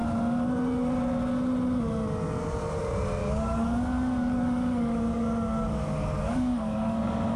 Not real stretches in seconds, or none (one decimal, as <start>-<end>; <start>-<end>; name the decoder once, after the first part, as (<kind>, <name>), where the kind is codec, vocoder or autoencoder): 3.2-7.4 (codec, DAC)